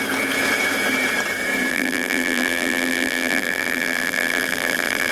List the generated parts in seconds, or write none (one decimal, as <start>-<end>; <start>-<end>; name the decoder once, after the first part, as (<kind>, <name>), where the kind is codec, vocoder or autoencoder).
1.7-5.1 (vocoder, BigVGAN v2)